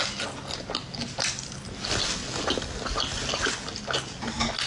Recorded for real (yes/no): yes